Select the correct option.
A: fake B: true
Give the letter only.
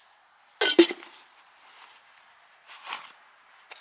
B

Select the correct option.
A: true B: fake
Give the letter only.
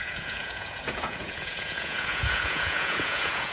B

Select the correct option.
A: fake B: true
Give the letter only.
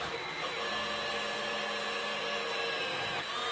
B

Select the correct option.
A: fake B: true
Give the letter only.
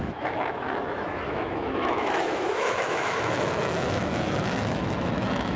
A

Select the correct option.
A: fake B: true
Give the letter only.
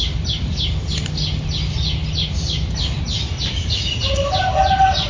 B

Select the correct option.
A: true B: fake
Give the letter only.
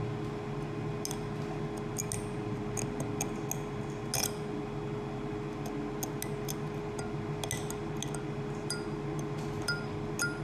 A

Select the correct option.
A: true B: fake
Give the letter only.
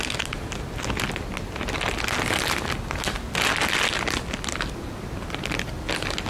A